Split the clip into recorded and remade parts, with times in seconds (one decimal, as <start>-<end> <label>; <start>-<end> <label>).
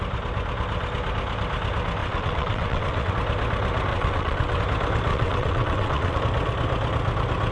0.0-2.0 recorded; 2.0-3.1 remade; 3.1-3.9 recorded; 3.9-4.6 remade; 4.6-5.1 recorded; 5.1-6.2 remade; 6.2-7.5 recorded